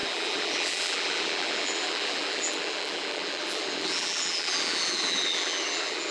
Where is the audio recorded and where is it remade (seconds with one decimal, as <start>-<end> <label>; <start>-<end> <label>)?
0.0-6.1 remade

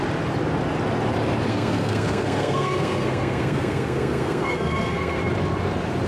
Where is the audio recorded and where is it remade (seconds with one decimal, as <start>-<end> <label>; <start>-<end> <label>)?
0.0-1.5 recorded; 1.5-5.2 remade; 5.2-6.1 recorded

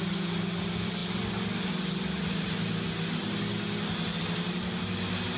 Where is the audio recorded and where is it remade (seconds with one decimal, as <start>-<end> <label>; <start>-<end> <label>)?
0.0-5.4 recorded

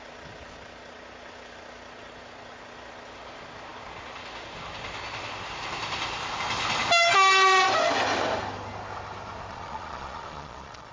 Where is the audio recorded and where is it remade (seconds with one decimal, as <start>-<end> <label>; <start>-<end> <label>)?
0.0-9.5 recorded; 9.5-10.9 remade

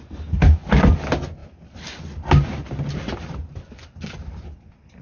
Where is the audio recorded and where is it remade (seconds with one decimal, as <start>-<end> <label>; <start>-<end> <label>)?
0.0-5.0 recorded